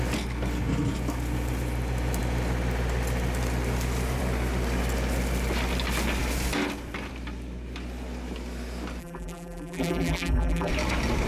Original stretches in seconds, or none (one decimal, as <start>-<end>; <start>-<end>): 0.0-9.0; 10.7-11.3